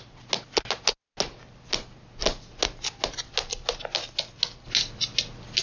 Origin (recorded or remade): recorded